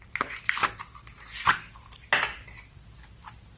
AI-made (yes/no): no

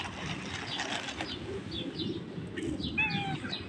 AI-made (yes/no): no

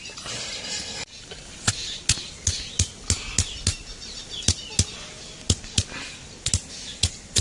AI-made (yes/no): no